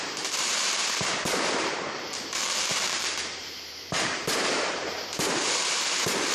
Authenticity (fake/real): fake